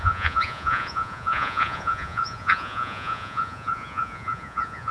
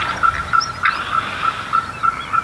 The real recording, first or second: second